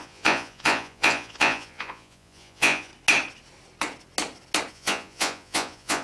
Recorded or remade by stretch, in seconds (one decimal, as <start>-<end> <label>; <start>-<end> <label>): 0.0-2.9 remade; 2.9-4.7 recorded; 4.7-6.0 remade